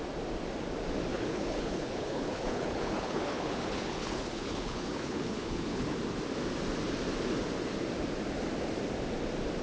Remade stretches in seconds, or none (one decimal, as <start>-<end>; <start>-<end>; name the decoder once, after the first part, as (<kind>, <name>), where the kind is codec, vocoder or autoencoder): 1.1-6.0 (codec, HILCodec)